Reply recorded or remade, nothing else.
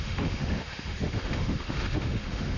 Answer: remade